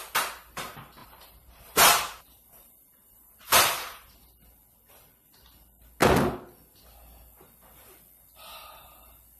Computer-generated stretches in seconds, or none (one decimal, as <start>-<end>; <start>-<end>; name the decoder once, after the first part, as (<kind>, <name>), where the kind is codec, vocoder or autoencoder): 1.0-4.2 (vocoder, BigVGAN v2)